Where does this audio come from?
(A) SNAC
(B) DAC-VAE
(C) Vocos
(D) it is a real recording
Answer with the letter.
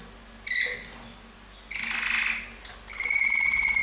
D